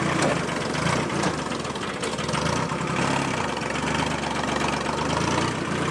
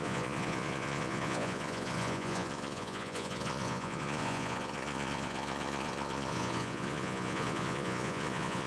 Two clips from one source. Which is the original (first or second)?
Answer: first